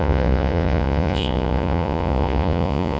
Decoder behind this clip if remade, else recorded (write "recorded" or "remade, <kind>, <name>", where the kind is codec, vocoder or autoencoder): remade, vocoder, Vocos